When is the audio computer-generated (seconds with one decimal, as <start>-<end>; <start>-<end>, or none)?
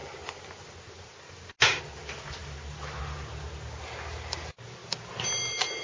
none